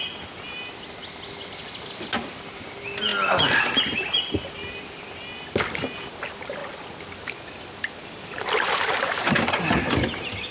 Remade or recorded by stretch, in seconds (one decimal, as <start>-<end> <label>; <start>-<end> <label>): 0.0-1.0 recorded; 1.0-1.6 remade; 1.6-3.1 recorded; 3.1-4.8 remade; 4.8-10.5 recorded